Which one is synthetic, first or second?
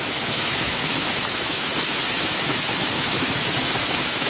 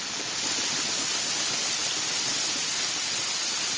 first